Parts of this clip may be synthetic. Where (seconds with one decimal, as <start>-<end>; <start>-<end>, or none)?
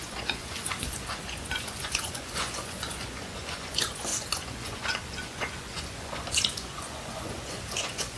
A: 0.0-8.2